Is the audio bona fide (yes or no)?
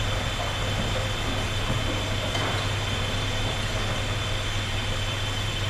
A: yes